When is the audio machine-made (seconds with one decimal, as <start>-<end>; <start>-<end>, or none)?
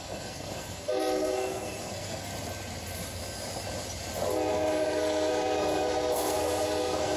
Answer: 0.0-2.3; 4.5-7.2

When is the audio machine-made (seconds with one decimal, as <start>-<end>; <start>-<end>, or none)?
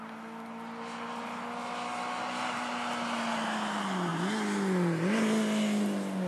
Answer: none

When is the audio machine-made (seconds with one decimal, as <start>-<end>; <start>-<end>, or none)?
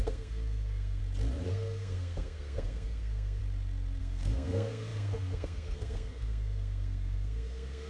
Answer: 0.0-1.0; 1.5-3.4; 4.0-7.9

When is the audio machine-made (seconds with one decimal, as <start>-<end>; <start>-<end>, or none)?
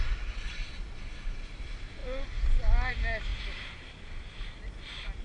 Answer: none